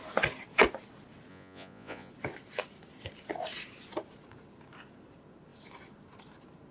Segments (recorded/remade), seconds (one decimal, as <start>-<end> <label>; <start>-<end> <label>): 0.0-1.3 recorded; 1.3-2.1 remade; 2.1-6.7 recorded